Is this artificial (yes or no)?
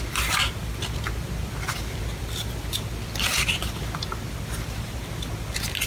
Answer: no